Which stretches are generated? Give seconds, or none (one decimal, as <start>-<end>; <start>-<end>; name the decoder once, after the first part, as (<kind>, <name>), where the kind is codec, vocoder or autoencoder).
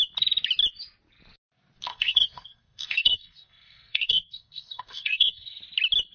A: 1.9-5.6 (codec, SNAC)